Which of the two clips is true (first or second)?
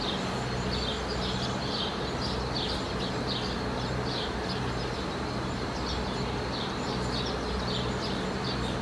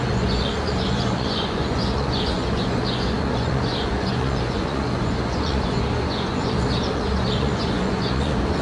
first